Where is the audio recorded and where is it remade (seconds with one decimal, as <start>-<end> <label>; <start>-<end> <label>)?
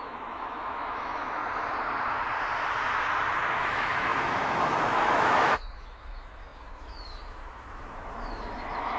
0.0-1.4 remade; 1.4-3.5 recorded; 3.5-9.0 remade